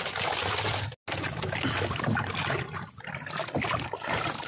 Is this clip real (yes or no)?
yes